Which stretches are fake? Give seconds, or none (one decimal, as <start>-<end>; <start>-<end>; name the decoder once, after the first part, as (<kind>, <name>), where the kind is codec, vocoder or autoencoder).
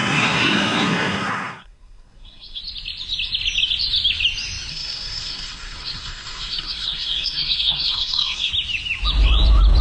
0.0-2.6 (codec, SNAC); 4.7-8.5